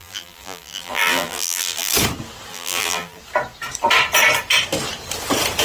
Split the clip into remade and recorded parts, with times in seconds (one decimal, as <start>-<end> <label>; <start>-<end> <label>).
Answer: 0.0-1.9 remade; 1.9-2.5 recorded; 2.5-3.2 remade; 3.2-5.6 recorded